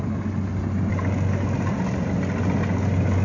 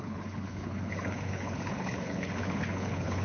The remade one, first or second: second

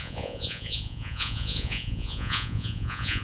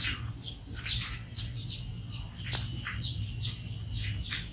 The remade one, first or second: first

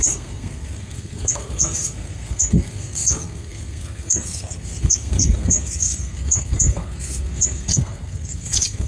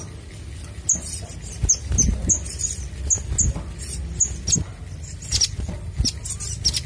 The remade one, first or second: first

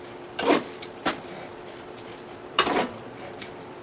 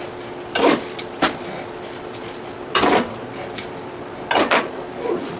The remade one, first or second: first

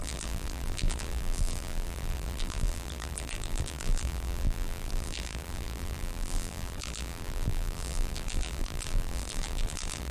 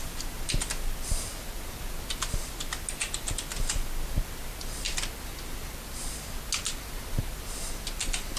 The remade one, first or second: first